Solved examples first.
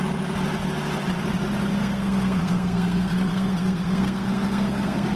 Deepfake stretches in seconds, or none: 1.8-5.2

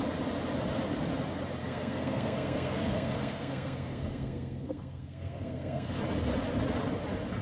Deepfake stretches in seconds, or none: 1.6-6.0

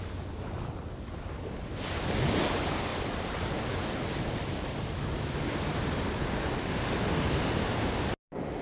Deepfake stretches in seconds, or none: none

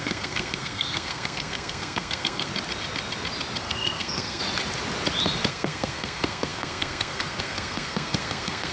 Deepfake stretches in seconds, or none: 0.0-2.5; 3.6-4.4; 5.5-8.7

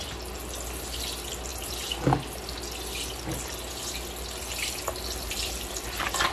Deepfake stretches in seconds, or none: none